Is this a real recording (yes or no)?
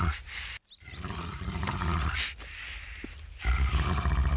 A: yes